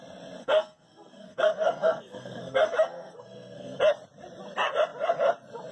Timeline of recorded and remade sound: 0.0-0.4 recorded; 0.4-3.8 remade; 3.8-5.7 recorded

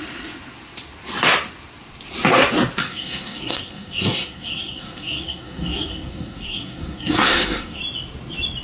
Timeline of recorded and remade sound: 0.0-2.8 recorded; 2.8-7.8 remade; 7.8-8.6 recorded

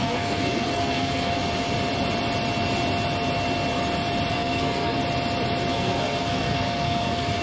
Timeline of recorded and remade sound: 0.0-1.4 remade; 1.4-4.3 recorded; 4.3-5.0 remade; 5.0-5.7 recorded; 5.7-7.4 remade

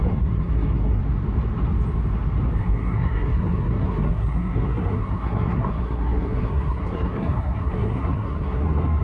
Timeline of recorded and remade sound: 0.0-1.0 remade; 1.0-2.6 recorded; 2.6-9.0 remade

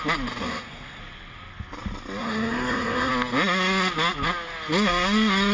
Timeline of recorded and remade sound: 0.0-0.4 recorded; 0.4-1.0 remade; 1.0-2.2 recorded; 2.2-3.1 remade; 3.1-5.5 recorded

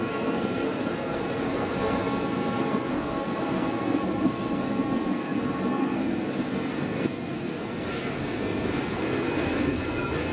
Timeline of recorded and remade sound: 0.0-10.3 remade

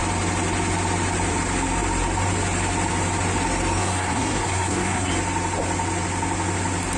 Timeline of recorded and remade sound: 0.0-3.8 recorded; 3.8-5.1 remade; 5.1-7.0 recorded

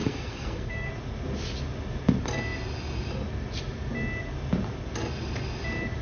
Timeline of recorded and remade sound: 0.0-0.9 remade; 0.9-6.0 recorded